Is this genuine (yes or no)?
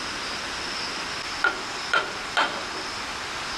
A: yes